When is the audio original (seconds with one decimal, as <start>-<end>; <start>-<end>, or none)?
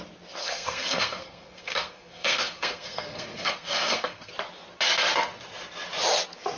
0.0-0.4; 4.3-6.6